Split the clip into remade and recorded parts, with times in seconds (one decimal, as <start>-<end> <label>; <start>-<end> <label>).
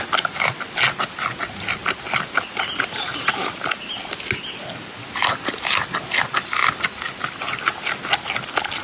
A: 0.0-6.6 recorded; 6.6-7.6 remade; 7.6-8.8 recorded